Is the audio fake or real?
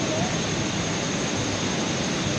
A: real